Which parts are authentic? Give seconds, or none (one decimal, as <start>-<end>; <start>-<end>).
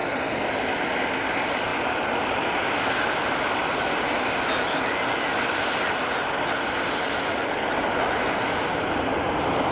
0.0-9.7